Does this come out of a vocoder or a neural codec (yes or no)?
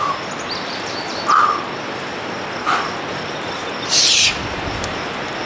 no